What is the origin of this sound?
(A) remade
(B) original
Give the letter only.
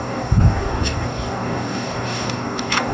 A